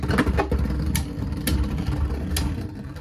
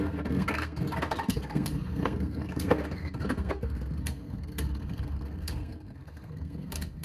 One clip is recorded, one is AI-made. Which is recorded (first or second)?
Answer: first